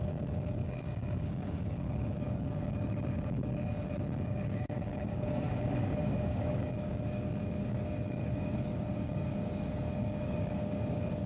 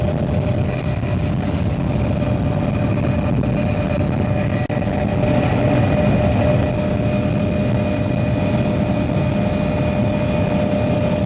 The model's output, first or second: first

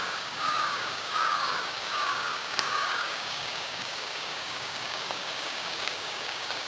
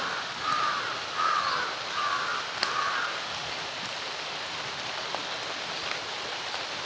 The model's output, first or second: first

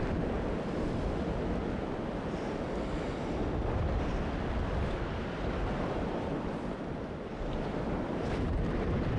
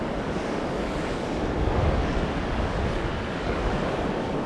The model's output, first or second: second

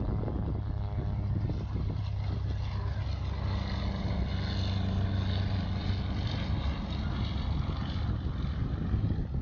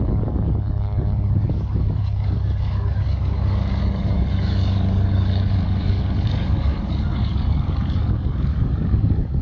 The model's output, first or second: second